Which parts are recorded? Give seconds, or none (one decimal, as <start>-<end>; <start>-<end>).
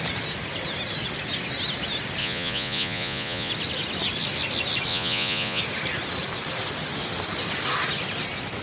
0.0-2.2; 3.5-4.9; 5.6-8.6